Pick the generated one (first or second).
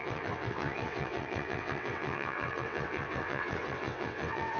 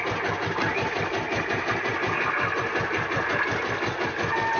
first